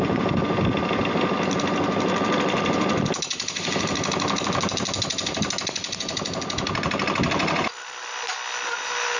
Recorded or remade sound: recorded